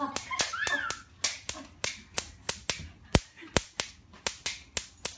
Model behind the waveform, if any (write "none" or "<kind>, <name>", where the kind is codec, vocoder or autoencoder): none